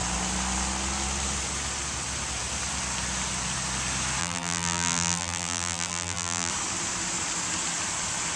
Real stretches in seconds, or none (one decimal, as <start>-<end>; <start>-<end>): 0.0-4.2; 6.5-8.4